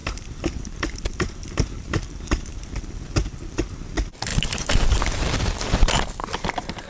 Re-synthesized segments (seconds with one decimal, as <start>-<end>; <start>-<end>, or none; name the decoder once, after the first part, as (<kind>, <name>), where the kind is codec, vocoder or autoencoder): 0.0-2.8 (vocoder, BigVGAN v2); 3.2-3.7; 4.3-5.9